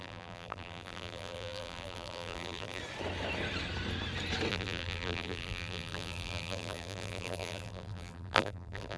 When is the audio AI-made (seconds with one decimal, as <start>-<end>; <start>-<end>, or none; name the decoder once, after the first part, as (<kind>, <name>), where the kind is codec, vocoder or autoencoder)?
0.0-2.8 (vocoder, BigVGAN v2); 4.5-9.0